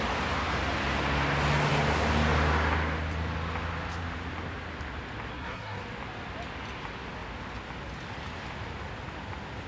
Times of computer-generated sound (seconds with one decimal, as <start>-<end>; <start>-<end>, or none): 5.3-5.8